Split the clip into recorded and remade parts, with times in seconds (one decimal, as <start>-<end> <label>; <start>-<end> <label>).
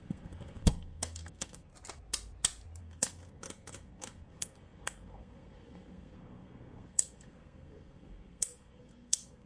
0.0-1.7 remade; 1.7-2.8 recorded; 2.8-9.5 remade